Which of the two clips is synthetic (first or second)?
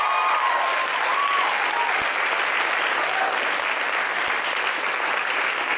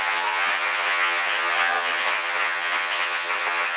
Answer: second